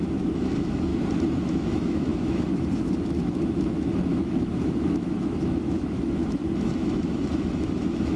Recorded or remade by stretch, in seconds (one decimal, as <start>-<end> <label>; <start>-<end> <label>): 0.0-0.9 remade; 0.9-1.5 recorded; 1.5-8.2 remade